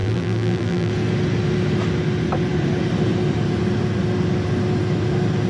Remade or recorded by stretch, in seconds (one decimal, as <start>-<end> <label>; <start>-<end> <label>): 0.0-0.9 remade; 0.9-5.5 recorded